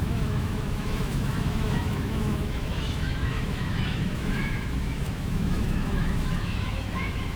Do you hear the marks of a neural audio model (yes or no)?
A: yes